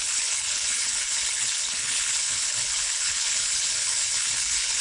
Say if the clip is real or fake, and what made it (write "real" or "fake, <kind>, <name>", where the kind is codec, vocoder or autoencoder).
fake, codec, HILCodec